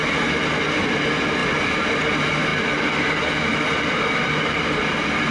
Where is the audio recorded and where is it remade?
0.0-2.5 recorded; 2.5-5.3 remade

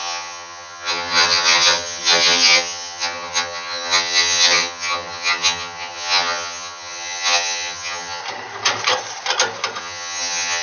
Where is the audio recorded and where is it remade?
0.0-8.2 remade; 8.2-9.8 recorded; 9.8-10.6 remade

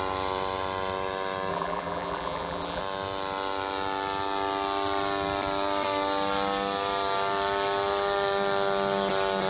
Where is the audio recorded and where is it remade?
0.0-1.5 recorded; 1.5-2.8 remade; 2.8-9.5 recorded

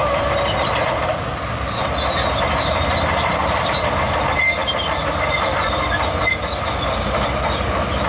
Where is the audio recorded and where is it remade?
0.0-8.1 recorded

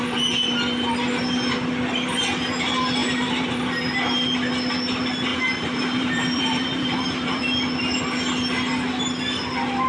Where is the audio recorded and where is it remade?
0.0-3.0 recorded; 3.0-3.6 remade; 3.6-5.3 recorded; 5.3-7.4 remade; 7.4-9.9 recorded

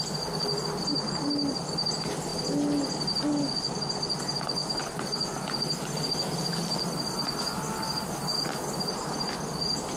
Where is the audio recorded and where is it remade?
0.0-10.0 recorded

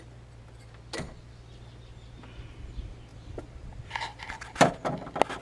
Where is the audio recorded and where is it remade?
0.0-3.1 recorded; 3.1-4.7 remade; 4.7-5.4 recorded